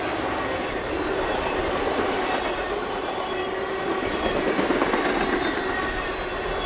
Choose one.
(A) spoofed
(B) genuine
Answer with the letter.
B